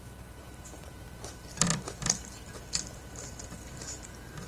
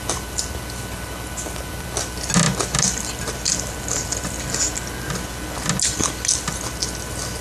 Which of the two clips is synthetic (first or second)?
first